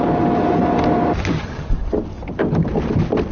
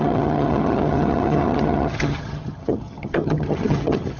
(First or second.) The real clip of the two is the first